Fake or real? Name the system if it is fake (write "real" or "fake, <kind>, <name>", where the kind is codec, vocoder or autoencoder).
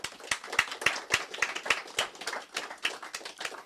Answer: real